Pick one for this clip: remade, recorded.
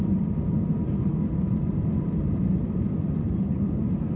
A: recorded